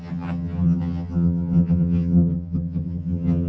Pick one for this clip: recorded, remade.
remade